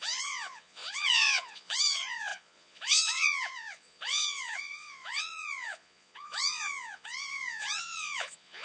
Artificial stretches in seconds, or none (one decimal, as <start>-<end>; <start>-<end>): 0.0-8.6